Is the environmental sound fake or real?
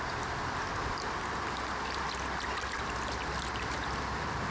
real